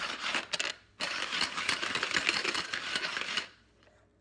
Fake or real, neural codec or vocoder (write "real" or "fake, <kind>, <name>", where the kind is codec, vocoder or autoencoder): real